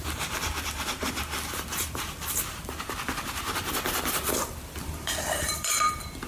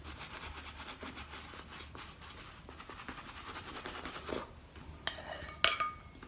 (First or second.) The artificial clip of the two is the first